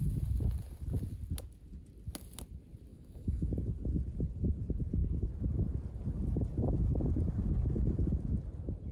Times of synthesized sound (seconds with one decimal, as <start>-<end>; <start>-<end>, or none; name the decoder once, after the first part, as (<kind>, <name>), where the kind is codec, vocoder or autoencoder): 2.9-3.5 (autoencoder, DAC-VAE)